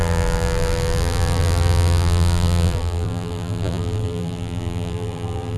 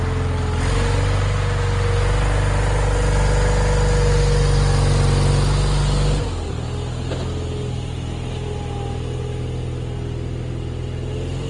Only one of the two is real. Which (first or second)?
second